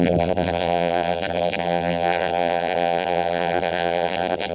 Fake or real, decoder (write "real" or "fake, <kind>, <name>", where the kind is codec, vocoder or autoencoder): fake, vocoder, BigVGAN v2